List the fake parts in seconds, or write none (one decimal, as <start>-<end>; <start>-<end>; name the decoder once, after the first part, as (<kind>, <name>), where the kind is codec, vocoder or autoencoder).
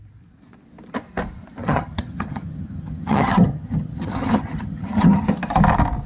1.6-5.3 (vocoder, HiFi-GAN)